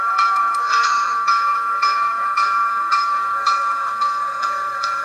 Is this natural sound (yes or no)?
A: no